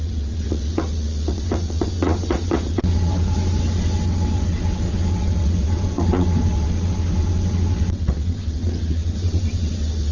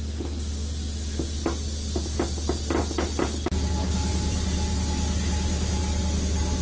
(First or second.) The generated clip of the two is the first